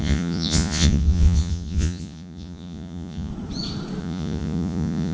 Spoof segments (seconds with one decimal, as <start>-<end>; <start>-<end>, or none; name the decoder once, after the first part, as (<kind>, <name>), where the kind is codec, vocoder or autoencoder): 0.0-3.3 (vocoder, Vocos); 4.0-5.1